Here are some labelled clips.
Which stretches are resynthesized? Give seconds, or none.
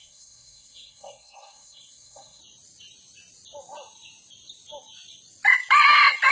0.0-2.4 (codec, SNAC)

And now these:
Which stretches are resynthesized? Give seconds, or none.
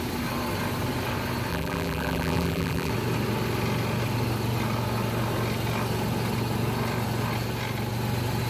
1.5-2.9 (vocoder, BigVGAN v2)